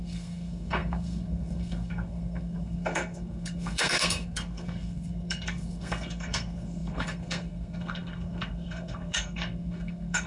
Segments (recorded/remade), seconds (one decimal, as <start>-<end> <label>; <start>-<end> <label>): 0.0-10.3 remade